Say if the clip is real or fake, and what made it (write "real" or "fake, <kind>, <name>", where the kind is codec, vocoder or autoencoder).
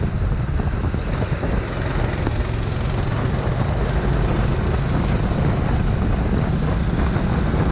real